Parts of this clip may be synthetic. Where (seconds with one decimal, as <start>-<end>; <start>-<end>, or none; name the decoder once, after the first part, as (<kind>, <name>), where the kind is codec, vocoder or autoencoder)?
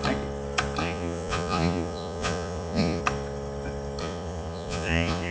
0.8-3.0 (vocoder, Vocos); 4.0-5.3